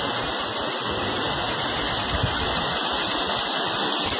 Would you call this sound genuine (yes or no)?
yes